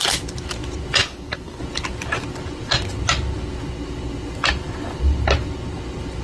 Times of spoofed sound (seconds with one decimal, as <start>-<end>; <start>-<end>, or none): 1.0-1.6